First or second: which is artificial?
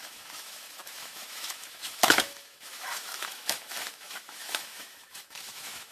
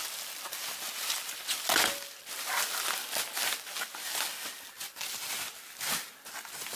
first